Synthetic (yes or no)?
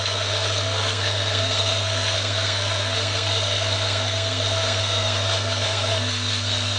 yes